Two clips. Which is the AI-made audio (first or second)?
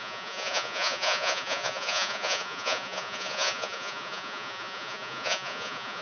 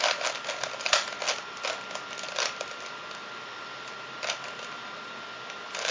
first